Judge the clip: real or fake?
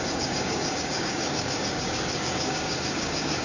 fake